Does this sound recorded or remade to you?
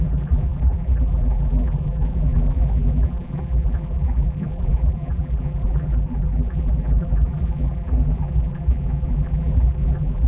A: remade